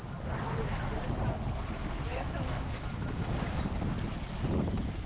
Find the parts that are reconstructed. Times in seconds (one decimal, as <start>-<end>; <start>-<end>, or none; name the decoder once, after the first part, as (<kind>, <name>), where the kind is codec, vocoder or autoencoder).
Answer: 2.1-3.1 (autoencoder, DAC-VAE)